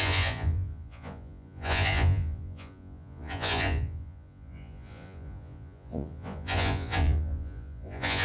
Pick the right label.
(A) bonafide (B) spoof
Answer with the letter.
B